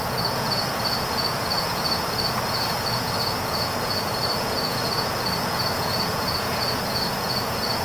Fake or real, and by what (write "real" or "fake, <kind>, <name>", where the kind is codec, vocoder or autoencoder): fake, vocoder, Vocos